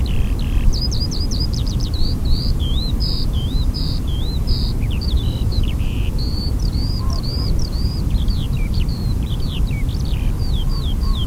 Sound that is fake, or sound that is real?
fake